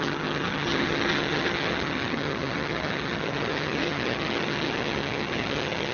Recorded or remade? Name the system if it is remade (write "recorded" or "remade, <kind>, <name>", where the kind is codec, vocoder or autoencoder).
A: remade, vocoder, HiFi-GAN